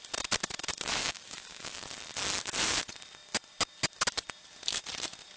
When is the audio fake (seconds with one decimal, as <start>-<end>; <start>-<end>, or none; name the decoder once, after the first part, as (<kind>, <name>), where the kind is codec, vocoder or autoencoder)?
1.0-1.8 (autoencoder, DAC-VAE)